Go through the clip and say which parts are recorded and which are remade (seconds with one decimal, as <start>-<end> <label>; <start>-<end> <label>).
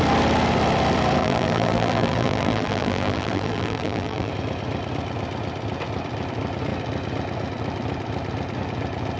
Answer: 0.0-1.2 recorded; 1.2-4.3 remade; 4.3-9.2 recorded